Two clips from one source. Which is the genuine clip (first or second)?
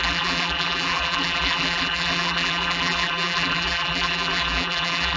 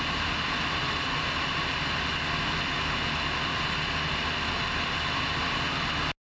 second